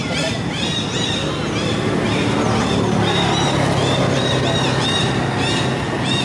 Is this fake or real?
real